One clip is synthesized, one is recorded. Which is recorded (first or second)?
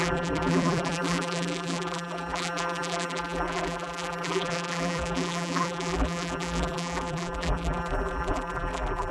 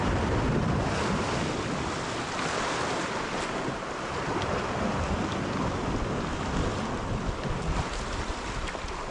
second